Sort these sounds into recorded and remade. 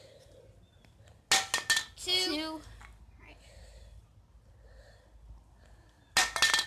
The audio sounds recorded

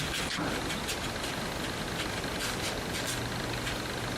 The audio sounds recorded